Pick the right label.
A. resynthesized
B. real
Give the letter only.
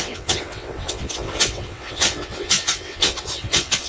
A